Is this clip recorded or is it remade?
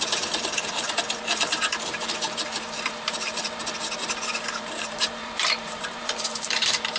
remade